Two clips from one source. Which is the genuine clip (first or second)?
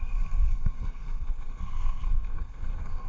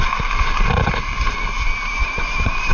second